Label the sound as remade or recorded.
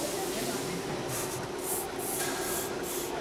recorded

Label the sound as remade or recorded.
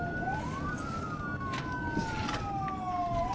recorded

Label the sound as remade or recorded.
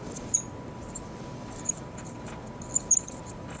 remade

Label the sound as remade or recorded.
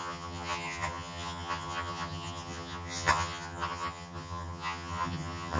remade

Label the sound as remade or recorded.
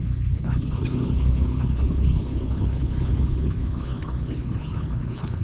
remade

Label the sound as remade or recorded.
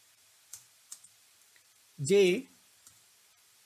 remade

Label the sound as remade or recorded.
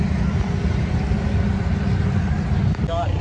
recorded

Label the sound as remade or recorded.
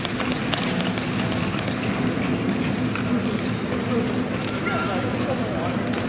recorded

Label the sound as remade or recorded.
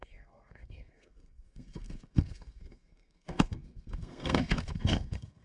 remade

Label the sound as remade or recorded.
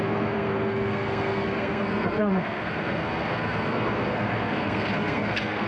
remade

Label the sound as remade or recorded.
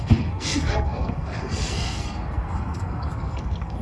remade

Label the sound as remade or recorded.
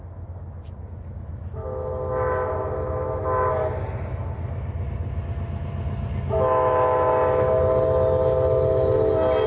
recorded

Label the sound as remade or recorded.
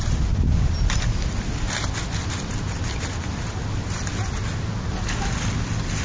recorded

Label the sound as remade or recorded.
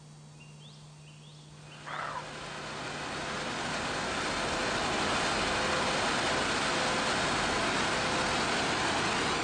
recorded